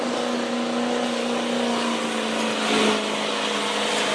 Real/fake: real